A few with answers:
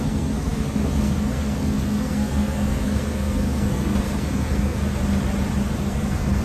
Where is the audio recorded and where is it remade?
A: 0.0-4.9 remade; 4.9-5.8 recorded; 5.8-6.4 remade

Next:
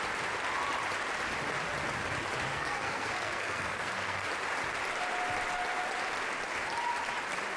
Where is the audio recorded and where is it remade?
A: 0.0-2.5 recorded; 2.5-4.3 remade; 4.3-7.6 recorded

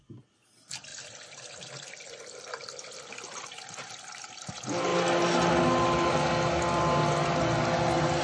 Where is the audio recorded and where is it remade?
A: 0.0-8.2 recorded

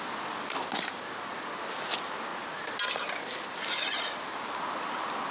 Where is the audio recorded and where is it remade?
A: 0.0-5.3 recorded

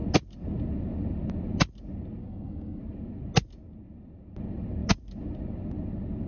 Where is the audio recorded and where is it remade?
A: 0.0-2.2 recorded; 2.2-2.8 remade; 2.8-6.3 recorded

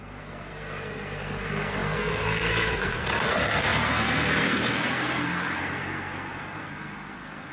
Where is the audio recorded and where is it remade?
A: 0.0-7.5 remade

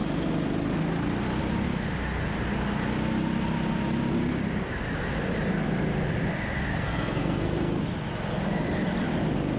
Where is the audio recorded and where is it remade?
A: 0.0-6.7 recorded; 6.7-7.7 remade; 7.7-9.6 recorded

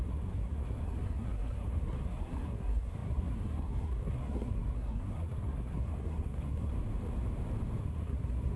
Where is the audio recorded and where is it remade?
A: 0.0-6.7 remade; 6.7-7.8 recorded; 7.8-8.6 remade